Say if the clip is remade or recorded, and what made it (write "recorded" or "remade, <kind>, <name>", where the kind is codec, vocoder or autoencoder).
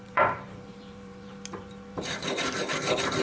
remade, vocoder, BigVGAN v2